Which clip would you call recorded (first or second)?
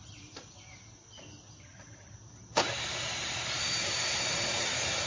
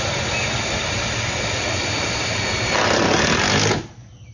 second